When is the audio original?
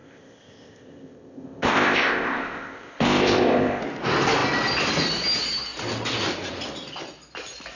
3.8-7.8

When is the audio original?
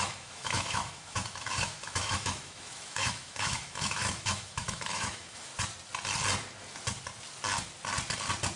5.5-8.6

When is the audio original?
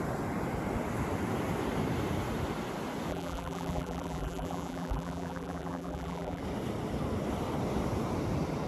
0.0-3.1; 6.4-8.7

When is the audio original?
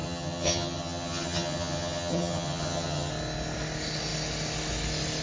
3.1-5.2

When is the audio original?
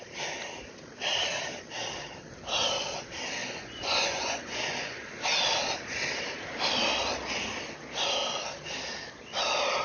0.0-3.4; 5.2-9.8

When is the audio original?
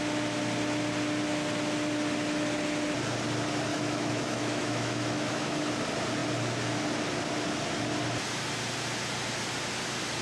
0.0-3.7; 5.7-10.2